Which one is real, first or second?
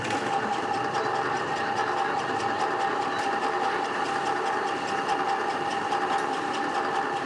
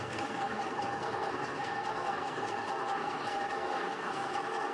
first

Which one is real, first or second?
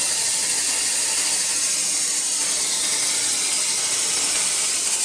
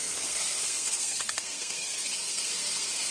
first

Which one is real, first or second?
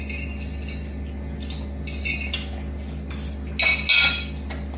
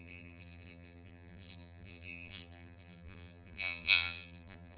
first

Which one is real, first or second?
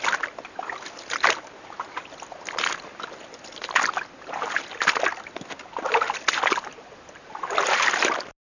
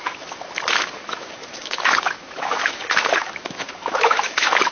first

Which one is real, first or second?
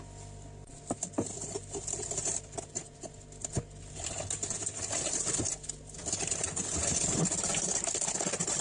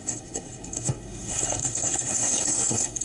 first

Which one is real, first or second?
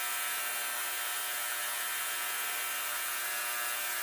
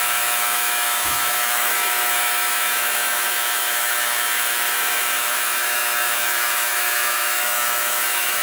first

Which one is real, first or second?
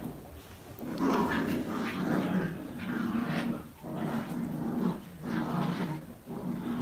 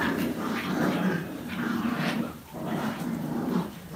first